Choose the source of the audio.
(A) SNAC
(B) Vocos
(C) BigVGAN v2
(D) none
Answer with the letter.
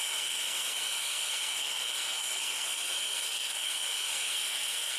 A